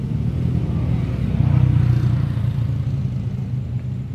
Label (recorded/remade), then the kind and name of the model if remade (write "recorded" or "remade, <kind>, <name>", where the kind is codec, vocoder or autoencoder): recorded